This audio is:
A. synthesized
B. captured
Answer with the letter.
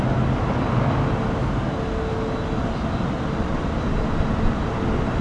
B